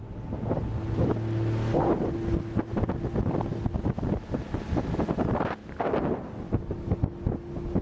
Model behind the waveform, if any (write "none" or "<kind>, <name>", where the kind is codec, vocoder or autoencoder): none